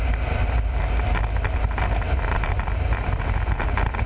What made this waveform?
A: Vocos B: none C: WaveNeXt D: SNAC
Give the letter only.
B